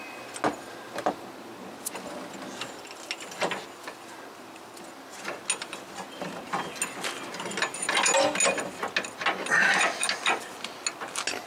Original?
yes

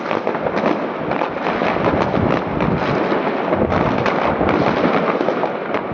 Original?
yes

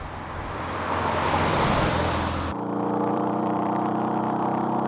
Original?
no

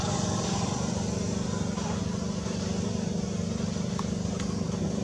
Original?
no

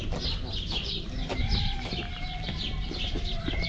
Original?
no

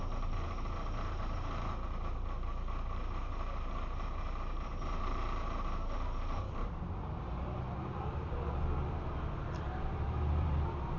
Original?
no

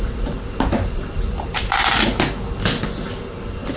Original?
yes